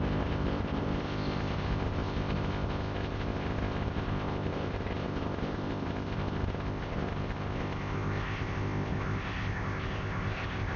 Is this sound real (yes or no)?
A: no